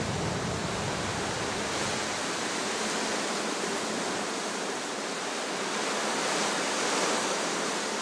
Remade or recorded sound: remade